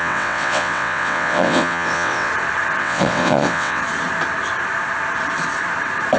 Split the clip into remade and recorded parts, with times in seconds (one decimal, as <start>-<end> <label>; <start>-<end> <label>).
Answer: 0.0-2.3 remade; 2.3-2.8 recorded; 2.8-3.8 remade; 3.8-6.2 recorded